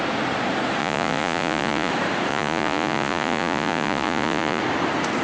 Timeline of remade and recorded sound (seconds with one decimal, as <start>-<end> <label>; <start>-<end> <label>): 0.0-0.8 recorded; 0.8-1.9 remade; 1.9-2.3 recorded; 2.3-4.6 remade; 4.6-5.2 recorded